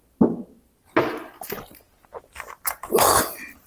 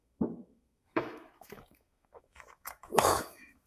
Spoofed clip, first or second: second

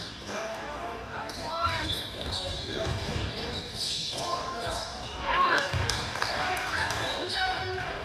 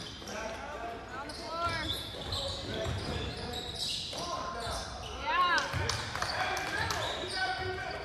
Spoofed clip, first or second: first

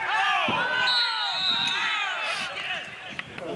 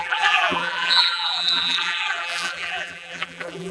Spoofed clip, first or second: second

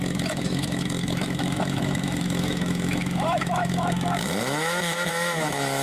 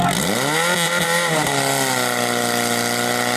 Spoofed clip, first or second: first